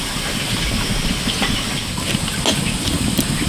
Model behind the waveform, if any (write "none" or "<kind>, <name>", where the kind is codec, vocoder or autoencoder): none